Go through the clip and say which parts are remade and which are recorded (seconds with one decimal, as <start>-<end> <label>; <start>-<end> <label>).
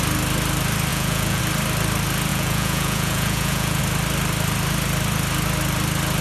0.0-0.9 recorded; 0.9-1.4 remade; 1.4-2.3 recorded; 2.3-3.8 remade; 3.8-6.2 recorded